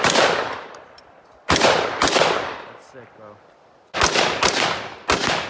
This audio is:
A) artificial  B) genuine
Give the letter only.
B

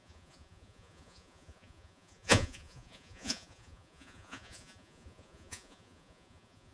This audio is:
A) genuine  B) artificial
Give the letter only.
B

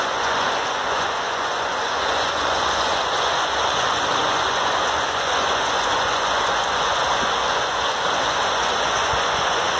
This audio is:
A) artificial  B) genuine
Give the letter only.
A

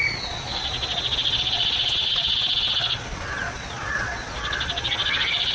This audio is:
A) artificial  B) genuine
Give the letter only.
A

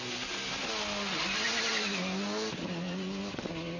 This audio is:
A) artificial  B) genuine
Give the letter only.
B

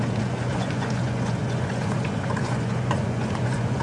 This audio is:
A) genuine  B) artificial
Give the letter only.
B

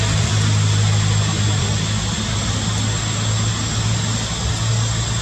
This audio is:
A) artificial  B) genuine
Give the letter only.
B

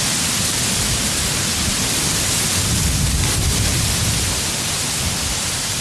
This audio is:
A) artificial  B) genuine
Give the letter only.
B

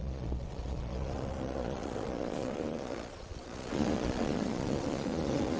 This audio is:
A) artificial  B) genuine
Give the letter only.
A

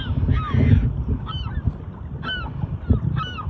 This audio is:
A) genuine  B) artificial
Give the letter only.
A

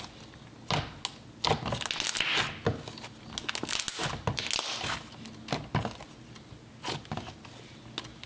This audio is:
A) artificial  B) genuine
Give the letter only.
B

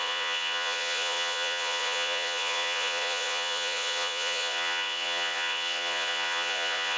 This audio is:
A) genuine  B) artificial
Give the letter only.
B